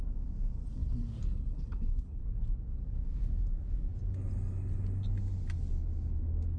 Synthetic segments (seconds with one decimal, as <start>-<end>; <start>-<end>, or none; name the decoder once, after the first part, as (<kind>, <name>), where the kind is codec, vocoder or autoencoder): 0.8-2.2 (codec, HILCodec)